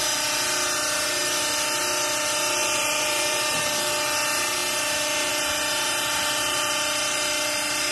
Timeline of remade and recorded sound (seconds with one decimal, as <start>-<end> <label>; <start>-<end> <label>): 0.0-2.6 recorded; 2.6-3.6 remade; 3.6-7.9 recorded